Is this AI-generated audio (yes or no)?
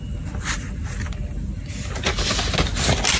no